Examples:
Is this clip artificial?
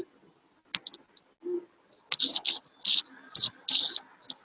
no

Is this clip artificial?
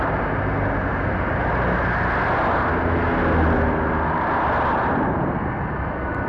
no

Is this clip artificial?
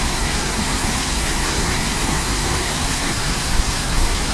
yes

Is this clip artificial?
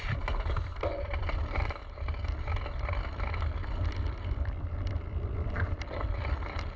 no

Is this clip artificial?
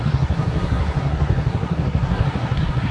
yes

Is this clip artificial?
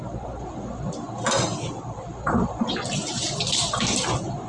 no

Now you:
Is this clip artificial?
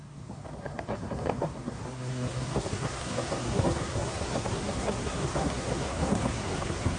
yes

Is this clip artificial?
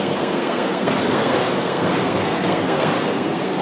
yes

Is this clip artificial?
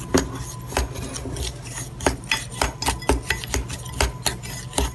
no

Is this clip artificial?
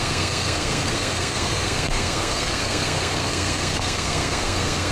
yes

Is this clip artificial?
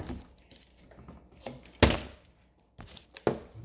no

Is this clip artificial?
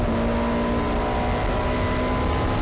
no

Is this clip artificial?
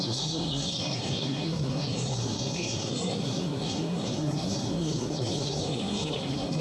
yes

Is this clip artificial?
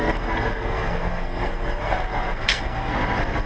yes